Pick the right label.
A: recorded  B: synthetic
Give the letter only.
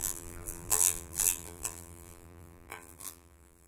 B